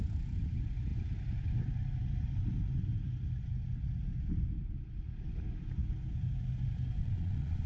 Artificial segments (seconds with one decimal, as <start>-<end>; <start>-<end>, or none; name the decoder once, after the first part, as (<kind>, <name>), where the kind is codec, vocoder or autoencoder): 7.0-7.7 (vocoder, Vocos)